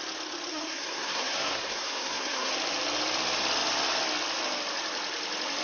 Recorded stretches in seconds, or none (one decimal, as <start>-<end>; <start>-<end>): 0.0-0.5; 2.5-5.6